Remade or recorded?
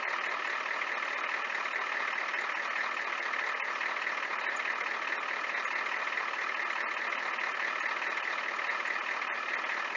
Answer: recorded